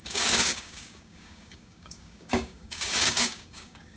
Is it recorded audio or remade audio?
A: remade